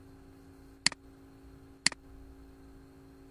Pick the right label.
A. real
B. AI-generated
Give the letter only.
A